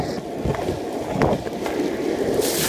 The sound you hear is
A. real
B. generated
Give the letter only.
A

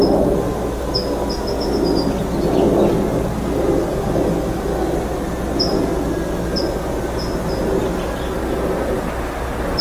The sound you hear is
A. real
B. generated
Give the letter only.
A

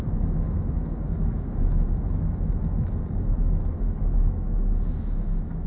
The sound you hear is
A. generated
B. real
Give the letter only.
A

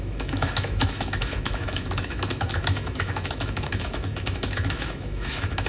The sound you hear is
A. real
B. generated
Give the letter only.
B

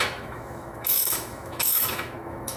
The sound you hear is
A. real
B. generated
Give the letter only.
B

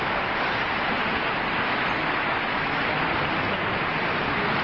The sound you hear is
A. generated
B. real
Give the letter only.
B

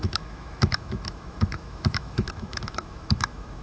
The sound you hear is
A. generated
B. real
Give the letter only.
A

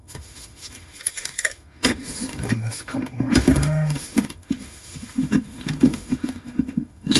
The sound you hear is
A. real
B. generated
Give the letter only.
B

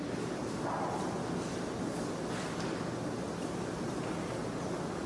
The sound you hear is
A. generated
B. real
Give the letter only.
B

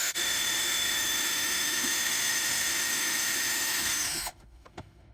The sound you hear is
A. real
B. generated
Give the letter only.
B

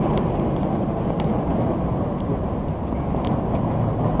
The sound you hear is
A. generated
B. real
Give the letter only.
B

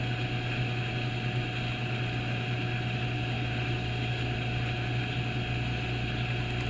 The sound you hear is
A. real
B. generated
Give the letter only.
A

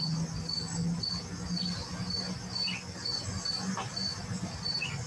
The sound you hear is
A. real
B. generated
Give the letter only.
A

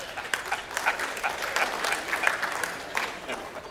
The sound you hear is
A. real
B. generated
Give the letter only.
A